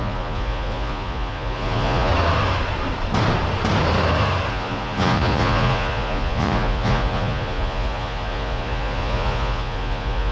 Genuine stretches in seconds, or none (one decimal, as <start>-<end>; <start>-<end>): 2.1-4.5